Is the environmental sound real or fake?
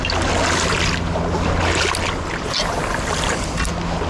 real